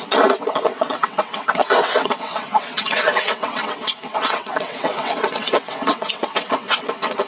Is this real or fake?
fake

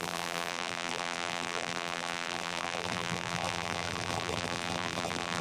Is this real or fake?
fake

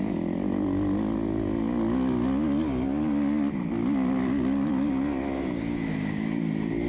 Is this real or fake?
real